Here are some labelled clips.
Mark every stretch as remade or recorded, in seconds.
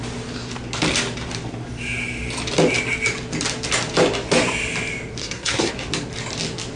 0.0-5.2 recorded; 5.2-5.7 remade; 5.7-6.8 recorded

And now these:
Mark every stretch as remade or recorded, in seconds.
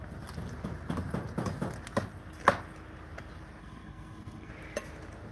0.0-3.6 recorded; 3.6-4.5 remade; 4.5-5.3 recorded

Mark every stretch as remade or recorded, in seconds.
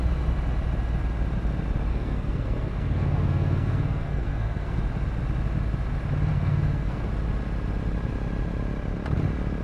0.0-1.9 recorded; 1.9-4.8 remade; 4.8-6.3 recorded; 6.3-7.1 remade; 7.1-9.6 recorded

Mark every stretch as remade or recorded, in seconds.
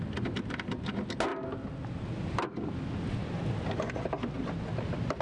0.0-5.2 recorded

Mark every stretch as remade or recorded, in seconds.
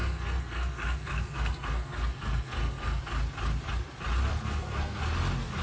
0.0-3.0 remade; 3.0-4.3 recorded; 4.3-5.0 remade; 5.0-5.6 recorded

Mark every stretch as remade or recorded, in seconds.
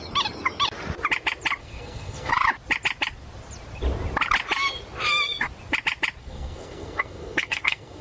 0.0-1.6 recorded; 1.6-2.3 remade; 2.3-6.2 recorded; 6.2-8.0 remade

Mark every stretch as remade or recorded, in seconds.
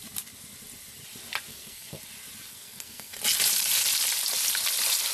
0.0-1.5 recorded; 1.5-2.0 remade; 2.0-2.5 recorded; 2.5-3.2 remade; 3.2-5.1 recorded